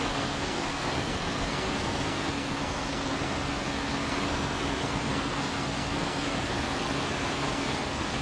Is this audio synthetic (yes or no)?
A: yes